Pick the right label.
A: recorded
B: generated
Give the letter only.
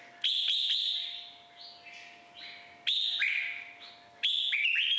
A